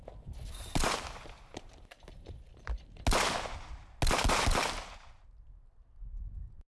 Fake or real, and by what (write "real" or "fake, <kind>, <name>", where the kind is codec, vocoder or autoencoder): real